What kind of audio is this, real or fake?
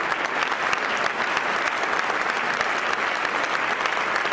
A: real